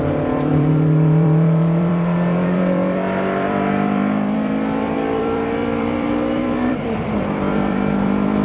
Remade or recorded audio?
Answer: remade